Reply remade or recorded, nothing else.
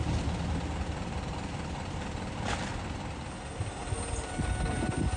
recorded